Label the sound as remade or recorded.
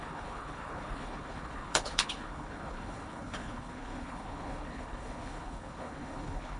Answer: remade